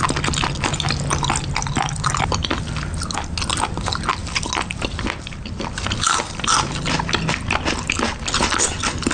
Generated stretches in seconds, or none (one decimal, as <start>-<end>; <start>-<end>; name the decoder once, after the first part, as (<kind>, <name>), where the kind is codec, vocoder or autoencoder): none